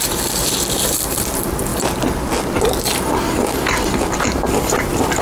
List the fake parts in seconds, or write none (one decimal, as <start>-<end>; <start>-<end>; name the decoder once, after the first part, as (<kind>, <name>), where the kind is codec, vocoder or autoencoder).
0.0-1.7 (vocoder, BigVGAN v2); 4.8-5.2